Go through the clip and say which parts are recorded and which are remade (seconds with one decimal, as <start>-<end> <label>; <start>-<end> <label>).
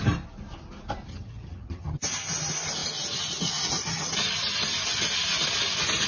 0.0-1.1 recorded; 1.1-2.0 remade; 2.0-6.1 recorded